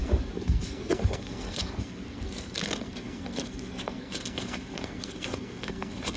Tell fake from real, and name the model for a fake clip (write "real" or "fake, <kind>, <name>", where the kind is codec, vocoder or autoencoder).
fake, codec, SNAC